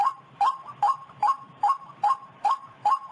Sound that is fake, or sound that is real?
fake